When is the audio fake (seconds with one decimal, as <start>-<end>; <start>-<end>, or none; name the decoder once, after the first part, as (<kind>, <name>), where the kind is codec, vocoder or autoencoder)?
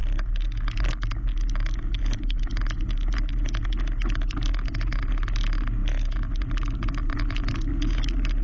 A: none